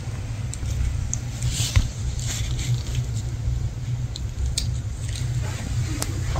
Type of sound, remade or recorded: recorded